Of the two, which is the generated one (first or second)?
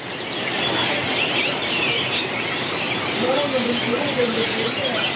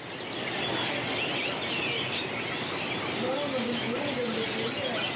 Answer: first